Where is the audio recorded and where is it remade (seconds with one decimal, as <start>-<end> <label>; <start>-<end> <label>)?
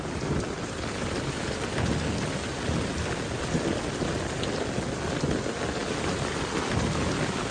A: 0.0-7.5 recorded